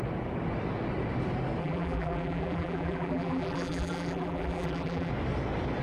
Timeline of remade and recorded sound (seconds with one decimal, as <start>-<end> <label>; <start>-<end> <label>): 0.0-1.6 recorded; 1.6-5.1 remade; 5.1-5.8 recorded